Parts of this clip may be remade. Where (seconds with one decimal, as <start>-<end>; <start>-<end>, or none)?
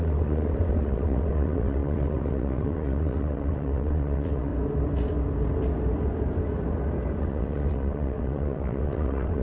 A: 0.0-4.5; 7.2-9.4